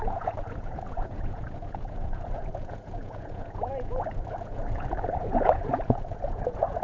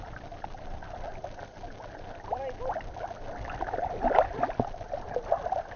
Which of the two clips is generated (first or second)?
first